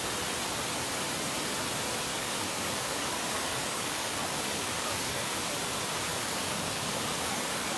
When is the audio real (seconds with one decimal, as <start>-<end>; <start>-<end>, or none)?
0.0-2.1; 5.5-6.1